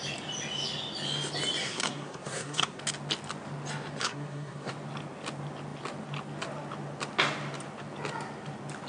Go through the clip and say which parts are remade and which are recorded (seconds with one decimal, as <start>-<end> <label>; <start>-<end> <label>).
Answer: 0.0-1.6 recorded; 1.6-2.8 remade; 2.8-4.0 recorded; 4.0-4.7 remade; 4.7-8.9 recorded